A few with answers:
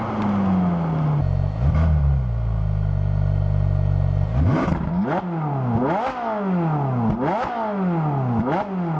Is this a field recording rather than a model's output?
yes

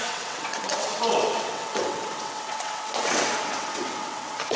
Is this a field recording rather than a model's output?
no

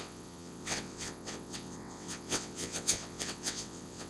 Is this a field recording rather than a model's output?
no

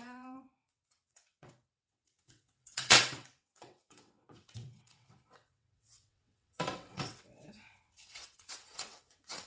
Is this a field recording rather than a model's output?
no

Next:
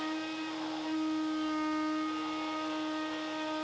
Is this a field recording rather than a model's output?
yes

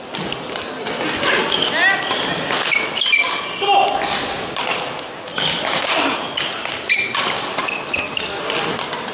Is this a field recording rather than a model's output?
yes